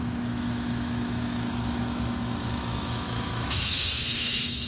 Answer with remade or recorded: remade